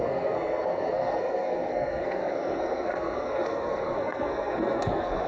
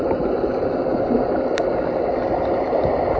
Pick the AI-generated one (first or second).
first